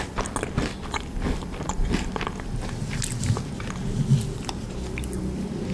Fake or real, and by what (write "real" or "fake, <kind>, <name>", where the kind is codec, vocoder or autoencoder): real